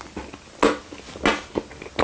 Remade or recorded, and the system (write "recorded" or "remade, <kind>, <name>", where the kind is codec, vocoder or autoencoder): recorded